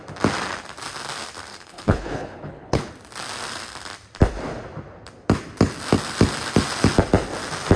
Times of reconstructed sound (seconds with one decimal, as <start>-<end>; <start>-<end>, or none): 1.5-2.9